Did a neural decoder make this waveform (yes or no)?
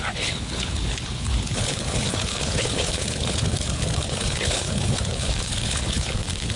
yes